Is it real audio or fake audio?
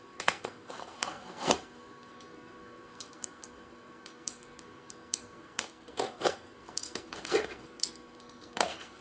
fake